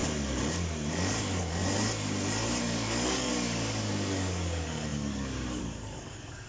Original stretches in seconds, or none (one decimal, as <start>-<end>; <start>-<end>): 0.0-0.9; 1.6-2.6